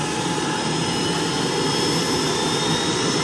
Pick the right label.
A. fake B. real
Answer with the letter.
B